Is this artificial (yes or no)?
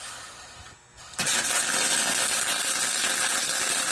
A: no